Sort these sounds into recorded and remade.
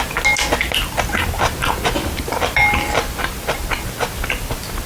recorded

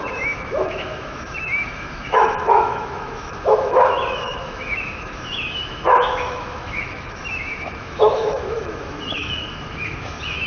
remade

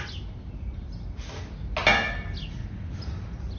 recorded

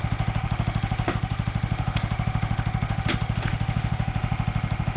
remade